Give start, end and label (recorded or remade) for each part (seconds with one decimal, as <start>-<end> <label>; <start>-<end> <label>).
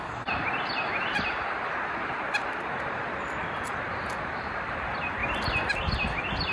0.0-5.2 remade; 5.2-5.7 recorded; 5.7-6.5 remade